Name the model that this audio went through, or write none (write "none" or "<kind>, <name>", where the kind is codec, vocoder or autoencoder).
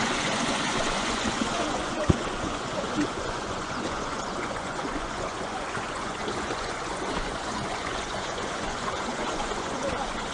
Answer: vocoder, Vocos